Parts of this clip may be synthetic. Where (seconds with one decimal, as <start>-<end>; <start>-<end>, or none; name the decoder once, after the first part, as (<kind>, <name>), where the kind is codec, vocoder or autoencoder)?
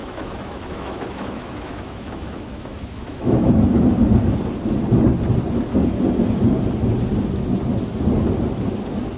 0.0-3.5 (autoencoder, DAC-VAE)